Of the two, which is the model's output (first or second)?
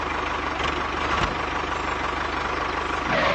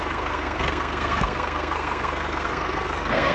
second